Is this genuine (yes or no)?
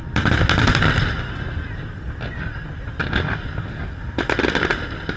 yes